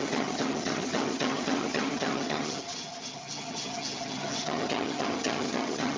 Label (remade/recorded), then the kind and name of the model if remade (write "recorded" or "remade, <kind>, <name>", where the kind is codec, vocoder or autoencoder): remade, vocoder, HiFi-GAN